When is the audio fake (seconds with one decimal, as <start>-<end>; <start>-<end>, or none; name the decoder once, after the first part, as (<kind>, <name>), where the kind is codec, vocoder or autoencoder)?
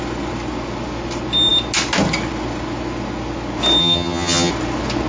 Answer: 3.8-4.5 (vocoder, HiFi-GAN)